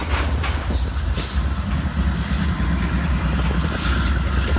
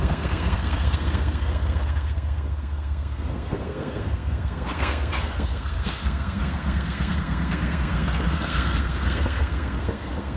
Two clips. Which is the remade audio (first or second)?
second